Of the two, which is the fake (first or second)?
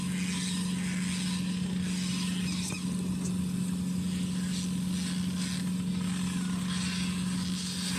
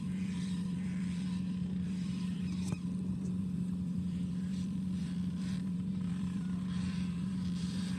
second